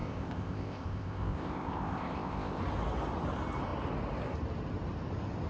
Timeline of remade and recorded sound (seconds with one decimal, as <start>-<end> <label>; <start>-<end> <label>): 0.0-2.6 remade; 2.6-5.5 recorded